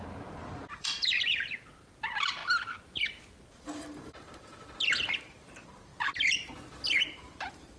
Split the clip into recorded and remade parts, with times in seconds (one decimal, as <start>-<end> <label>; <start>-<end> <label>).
0.0-2.4 remade; 2.4-3.5 recorded; 3.5-4.5 remade; 4.5-5.2 recorded; 5.2-5.9 remade; 5.9-7.0 recorded; 7.0-7.8 remade